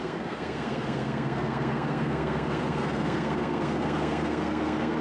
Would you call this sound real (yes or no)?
no